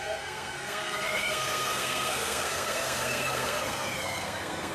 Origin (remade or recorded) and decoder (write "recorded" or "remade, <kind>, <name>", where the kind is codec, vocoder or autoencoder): remade, codec, SNAC